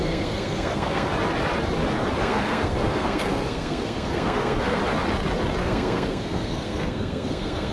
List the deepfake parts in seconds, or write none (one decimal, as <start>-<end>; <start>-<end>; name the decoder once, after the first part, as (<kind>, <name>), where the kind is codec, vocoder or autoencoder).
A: 0.0-1.1 (codec, SNAC); 2.2-4.8; 5.6-7.7